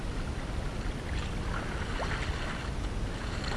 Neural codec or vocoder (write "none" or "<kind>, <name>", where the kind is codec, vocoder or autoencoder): none